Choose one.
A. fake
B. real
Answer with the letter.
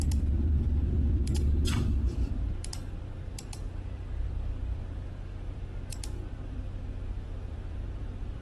A